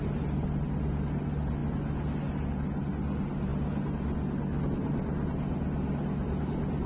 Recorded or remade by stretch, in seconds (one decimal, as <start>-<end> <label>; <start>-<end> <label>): 0.0-6.9 recorded